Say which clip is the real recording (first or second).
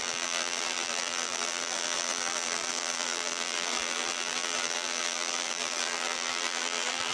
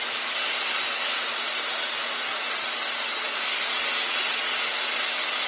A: second